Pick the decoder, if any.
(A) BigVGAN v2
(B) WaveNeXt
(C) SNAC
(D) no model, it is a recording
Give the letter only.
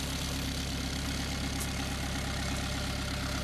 D